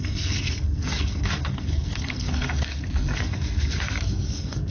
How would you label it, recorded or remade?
remade